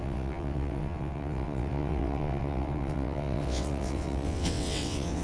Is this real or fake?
fake